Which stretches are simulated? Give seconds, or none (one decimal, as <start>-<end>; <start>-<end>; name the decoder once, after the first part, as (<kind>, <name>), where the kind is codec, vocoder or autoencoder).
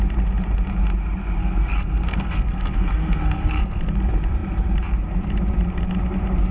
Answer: 1.4-3.8 (codec, SNAC)